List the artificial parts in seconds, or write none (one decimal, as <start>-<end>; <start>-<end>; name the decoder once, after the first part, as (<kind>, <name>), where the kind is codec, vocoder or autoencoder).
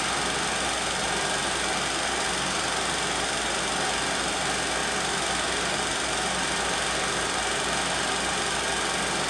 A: none